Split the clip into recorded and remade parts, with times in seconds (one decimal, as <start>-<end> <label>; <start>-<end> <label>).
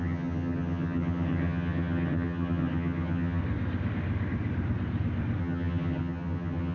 0.0-3.4 remade; 3.4-5.4 recorded; 5.4-6.7 remade